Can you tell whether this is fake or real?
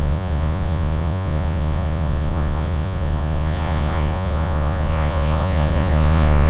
fake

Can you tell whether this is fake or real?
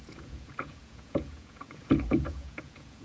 fake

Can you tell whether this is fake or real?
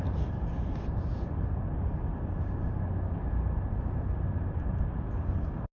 real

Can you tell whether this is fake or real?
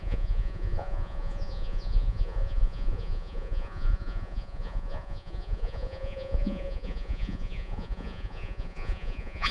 fake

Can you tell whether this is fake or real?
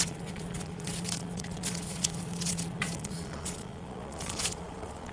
fake